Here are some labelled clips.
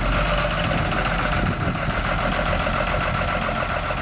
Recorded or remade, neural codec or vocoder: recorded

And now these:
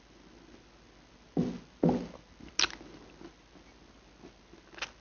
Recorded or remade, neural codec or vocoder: recorded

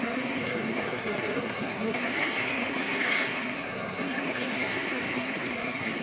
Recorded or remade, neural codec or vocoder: remade, codec, SNAC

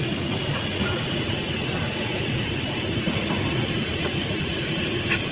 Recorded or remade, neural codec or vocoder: remade, vocoder, Vocos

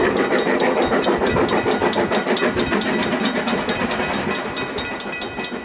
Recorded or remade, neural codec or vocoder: recorded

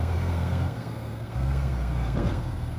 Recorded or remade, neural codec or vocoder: remade, codec, SNAC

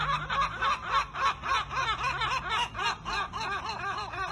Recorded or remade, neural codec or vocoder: recorded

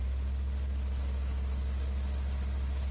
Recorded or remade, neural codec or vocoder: recorded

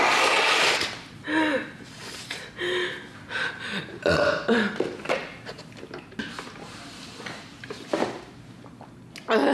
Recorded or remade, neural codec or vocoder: recorded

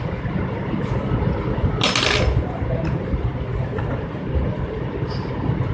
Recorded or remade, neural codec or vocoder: recorded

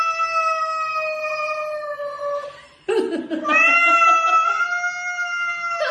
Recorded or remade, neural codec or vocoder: recorded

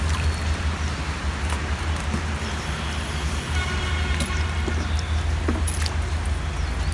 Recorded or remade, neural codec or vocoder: recorded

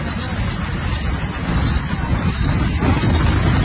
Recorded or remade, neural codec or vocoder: recorded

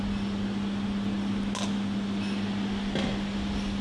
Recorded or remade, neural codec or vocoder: recorded